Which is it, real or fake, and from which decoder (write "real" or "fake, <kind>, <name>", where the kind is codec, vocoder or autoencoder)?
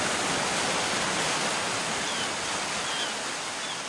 real